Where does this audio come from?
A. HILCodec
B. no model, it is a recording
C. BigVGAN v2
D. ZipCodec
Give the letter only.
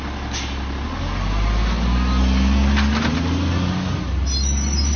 B